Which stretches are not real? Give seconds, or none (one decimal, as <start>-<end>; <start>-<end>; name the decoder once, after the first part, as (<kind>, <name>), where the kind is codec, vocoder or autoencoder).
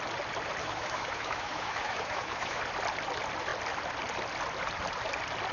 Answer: 0.6-2.6 (autoencoder, DAC-VAE)